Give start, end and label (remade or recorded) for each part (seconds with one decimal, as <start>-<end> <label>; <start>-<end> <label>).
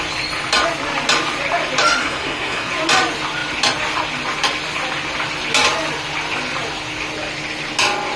0.0-2.0 recorded; 2.0-2.7 remade; 2.7-8.2 recorded